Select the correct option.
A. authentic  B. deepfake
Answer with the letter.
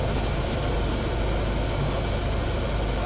A